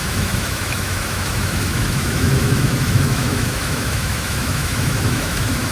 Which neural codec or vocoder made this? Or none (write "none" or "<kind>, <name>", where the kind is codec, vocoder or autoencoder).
autoencoder, DAC-VAE